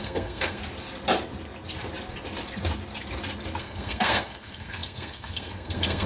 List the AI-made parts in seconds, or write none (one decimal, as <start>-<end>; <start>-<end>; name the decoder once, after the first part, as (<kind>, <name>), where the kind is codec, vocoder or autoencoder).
0.0-0.6 (codec, SNAC); 3.6-6.1